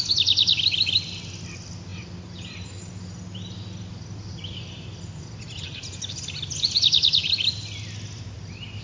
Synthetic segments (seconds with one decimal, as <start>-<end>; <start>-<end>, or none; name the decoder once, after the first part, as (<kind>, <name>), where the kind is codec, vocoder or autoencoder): none